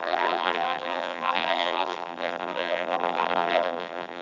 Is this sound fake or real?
fake